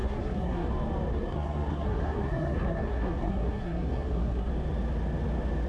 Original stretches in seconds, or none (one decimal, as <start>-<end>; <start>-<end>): 0.7-1.1; 4.5-5.7

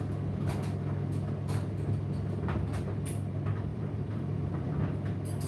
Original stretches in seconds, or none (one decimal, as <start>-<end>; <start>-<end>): 0.0-3.7; 4.7-5.5